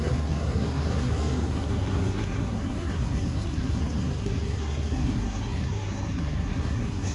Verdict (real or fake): fake